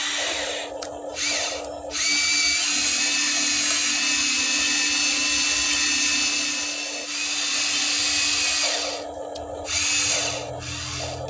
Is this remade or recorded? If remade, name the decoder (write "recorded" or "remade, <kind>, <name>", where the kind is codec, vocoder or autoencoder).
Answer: recorded